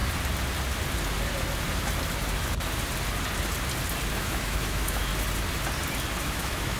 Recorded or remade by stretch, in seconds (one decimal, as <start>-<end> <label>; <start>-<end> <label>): 0.0-4.1 recorded; 4.1-5.1 remade; 5.1-6.2 recorded; 6.2-6.8 remade